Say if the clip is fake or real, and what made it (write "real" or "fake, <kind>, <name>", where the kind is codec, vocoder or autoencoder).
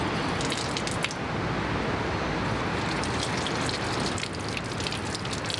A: real